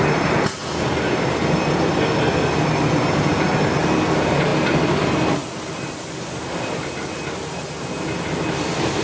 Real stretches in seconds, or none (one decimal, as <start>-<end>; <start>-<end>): 0.0-9.0